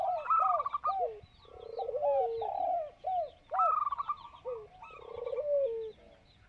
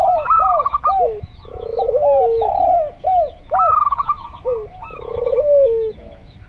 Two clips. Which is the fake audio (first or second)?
second